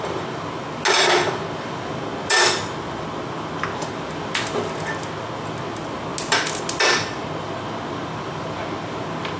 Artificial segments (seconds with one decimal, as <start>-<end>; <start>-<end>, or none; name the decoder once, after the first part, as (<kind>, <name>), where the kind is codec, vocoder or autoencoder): none